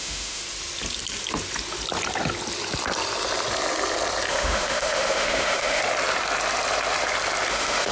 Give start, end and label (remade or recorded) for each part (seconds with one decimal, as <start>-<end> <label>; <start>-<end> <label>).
0.0-0.4 remade; 0.4-4.3 recorded; 4.3-5.8 remade; 5.8-7.5 recorded; 7.5-7.9 remade